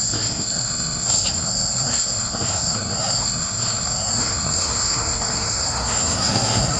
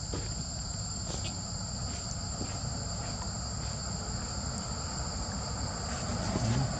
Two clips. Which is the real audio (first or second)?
second